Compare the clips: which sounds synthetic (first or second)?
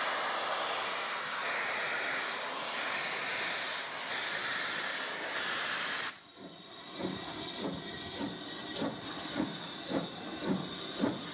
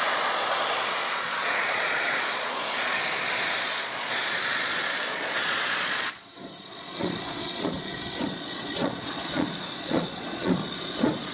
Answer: second